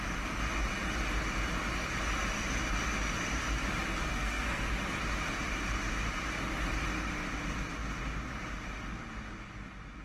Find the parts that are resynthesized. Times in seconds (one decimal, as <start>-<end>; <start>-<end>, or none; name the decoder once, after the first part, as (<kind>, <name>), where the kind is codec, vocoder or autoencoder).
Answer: 4.0-4.7 (codec, SNAC)